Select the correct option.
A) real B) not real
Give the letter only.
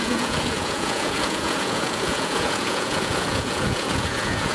B